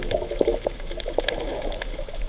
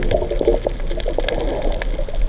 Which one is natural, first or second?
second